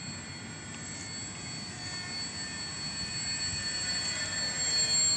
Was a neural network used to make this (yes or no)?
no